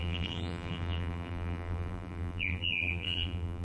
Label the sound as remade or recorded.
remade